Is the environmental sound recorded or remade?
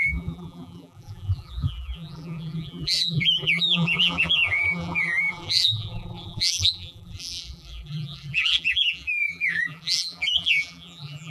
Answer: remade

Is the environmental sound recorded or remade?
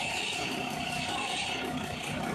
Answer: remade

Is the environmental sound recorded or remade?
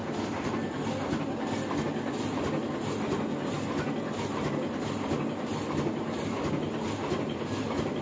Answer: recorded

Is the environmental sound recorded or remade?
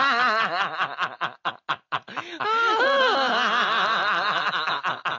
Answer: recorded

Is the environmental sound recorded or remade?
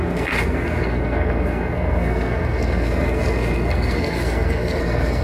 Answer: remade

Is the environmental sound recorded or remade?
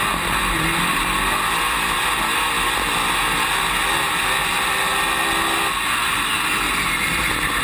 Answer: recorded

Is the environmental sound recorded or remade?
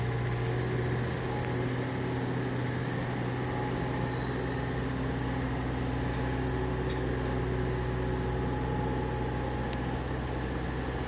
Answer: recorded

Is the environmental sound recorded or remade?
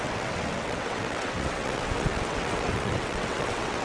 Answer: remade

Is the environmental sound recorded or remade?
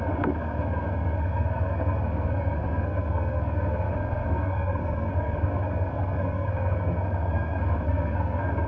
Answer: remade